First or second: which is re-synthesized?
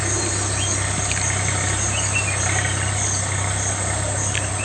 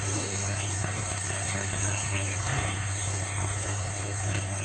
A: second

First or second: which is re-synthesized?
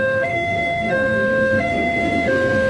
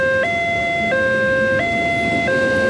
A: first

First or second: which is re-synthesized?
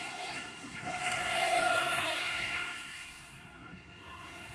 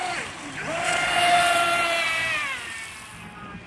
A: first